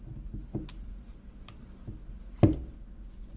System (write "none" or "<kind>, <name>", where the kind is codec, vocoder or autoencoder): none